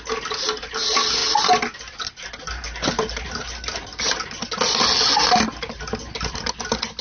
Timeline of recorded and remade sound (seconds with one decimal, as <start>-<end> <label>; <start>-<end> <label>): 0.0-7.0 recorded